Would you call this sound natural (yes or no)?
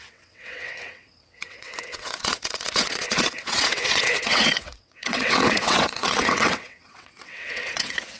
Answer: no